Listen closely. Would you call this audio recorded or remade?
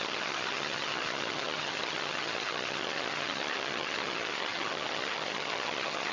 remade